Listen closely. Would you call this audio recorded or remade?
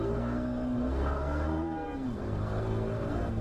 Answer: remade